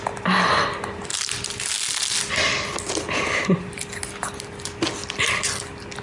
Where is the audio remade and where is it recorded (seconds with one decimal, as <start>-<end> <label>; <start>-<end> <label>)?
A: 0.0-6.0 recorded